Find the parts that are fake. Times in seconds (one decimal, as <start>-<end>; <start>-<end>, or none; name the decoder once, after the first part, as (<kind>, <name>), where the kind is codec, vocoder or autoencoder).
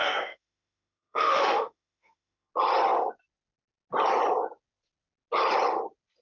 0.0-2.5 (autoencoder, DAC-VAE)